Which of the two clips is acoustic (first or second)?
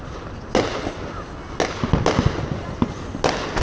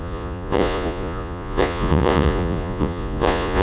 first